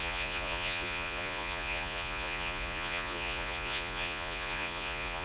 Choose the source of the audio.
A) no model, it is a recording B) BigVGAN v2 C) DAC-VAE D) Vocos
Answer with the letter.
D